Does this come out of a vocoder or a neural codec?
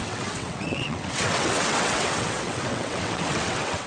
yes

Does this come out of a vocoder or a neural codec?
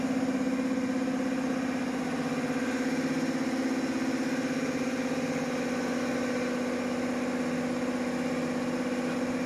no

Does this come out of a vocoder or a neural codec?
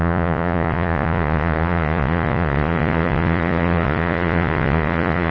yes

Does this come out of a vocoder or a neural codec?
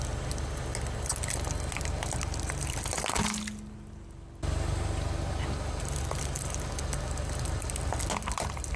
no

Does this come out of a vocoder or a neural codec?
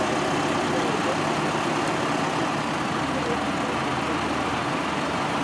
no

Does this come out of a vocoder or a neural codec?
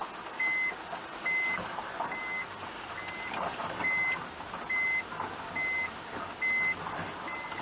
no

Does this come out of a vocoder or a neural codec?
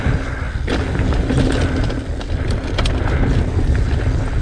no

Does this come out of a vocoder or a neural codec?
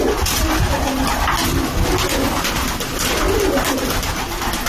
no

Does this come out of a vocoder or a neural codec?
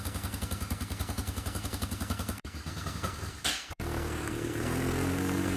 yes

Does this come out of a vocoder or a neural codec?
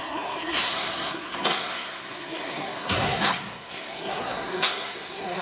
yes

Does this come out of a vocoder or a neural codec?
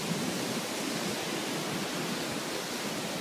no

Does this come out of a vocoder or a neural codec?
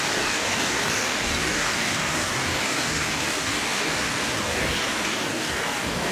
yes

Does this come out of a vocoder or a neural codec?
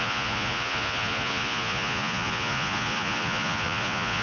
yes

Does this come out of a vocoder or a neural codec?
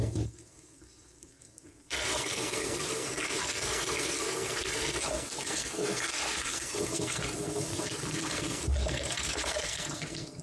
yes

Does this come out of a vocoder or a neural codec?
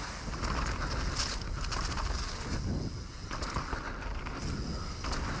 no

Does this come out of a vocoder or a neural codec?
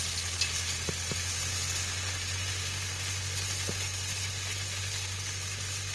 no